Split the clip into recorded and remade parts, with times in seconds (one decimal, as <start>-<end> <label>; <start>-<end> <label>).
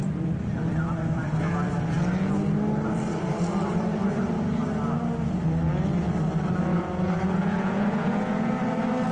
0.0-6.7 recorded; 6.7-8.5 remade; 8.5-9.1 recorded